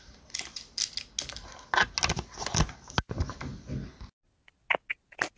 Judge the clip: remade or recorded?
recorded